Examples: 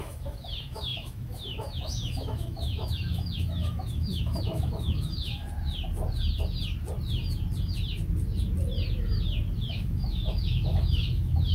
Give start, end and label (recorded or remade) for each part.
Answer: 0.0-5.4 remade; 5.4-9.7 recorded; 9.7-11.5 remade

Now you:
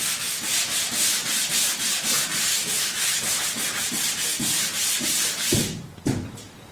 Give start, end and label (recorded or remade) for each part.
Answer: 0.0-2.5 recorded; 2.5-3.4 remade; 3.4-6.7 recorded

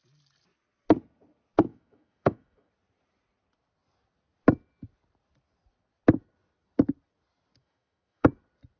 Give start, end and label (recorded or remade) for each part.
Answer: 0.0-1.7 recorded; 1.7-2.7 remade; 2.7-7.6 recorded; 7.6-8.3 remade; 8.3-8.8 recorded

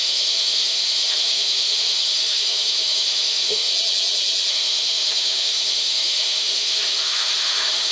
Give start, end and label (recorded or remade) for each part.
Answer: 0.0-3.7 remade; 3.7-4.5 recorded; 4.5-7.9 remade

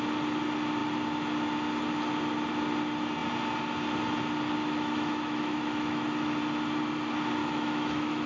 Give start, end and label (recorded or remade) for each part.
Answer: 0.0-4.6 recorded; 4.6-6.4 remade; 6.4-7.4 recorded; 7.4-8.3 remade